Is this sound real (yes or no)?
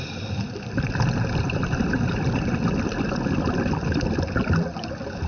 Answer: yes